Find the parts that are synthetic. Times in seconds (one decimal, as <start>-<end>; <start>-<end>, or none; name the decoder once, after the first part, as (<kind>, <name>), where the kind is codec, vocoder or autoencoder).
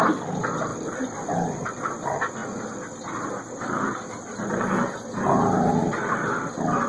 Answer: none